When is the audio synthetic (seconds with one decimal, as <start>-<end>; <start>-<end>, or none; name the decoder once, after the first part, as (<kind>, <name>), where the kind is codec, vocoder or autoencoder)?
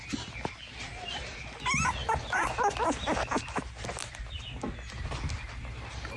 none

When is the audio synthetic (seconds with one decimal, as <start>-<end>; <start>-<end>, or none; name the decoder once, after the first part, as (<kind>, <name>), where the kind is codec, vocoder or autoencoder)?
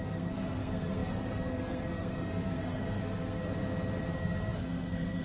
0.0-3.5 (codec, SNAC); 4.1-5.2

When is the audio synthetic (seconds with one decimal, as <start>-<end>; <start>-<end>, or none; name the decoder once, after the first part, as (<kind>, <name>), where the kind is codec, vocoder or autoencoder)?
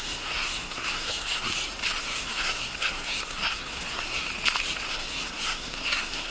0.0-1.5 (codec, SNAC); 2.0-4.3; 4.9-6.3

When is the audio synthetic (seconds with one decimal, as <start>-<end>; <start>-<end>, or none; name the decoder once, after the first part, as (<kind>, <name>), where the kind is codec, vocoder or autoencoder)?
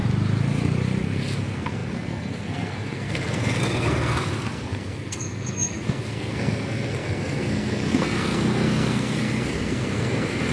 1.0-10.5 (codec, SNAC)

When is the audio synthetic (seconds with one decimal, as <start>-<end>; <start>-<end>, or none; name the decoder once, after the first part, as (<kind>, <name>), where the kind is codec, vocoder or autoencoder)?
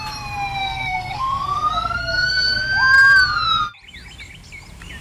0.6-2.6 (codec, SNAC)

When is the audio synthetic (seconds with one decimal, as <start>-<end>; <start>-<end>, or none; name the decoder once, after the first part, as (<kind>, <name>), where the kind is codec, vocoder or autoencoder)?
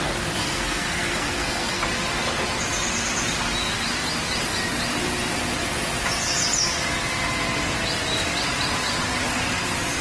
0.4-1.8 (codec, SNAC)